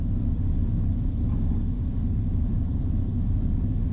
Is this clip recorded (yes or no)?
no